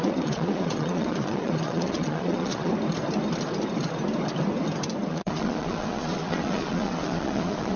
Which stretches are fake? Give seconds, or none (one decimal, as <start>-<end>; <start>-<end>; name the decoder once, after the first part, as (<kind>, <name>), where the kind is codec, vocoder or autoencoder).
0.0-2.7 (vocoder, Vocos); 5.1-7.8